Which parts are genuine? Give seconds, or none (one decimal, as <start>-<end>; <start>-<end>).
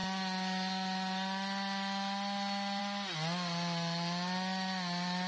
0.0-5.3